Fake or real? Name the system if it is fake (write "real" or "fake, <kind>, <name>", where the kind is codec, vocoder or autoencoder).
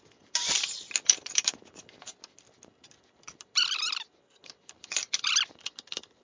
real